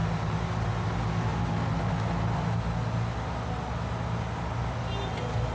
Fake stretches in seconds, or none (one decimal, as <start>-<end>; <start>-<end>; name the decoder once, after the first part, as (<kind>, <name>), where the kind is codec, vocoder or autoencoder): 0.0-0.9 (vocoder, BigVGAN v2)